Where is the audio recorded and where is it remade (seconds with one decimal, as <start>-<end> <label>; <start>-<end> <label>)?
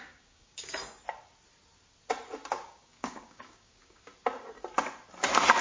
0.0-0.8 remade; 0.8-2.5 recorded; 2.5-4.1 remade; 4.1-5.6 recorded